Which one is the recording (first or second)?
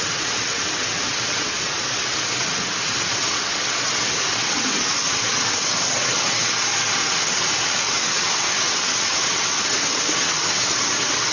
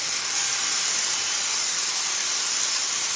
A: second